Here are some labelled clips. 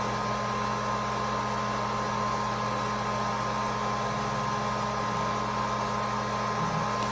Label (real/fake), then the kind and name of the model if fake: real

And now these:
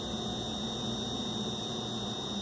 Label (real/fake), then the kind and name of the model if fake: real